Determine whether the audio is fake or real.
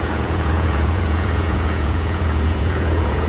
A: fake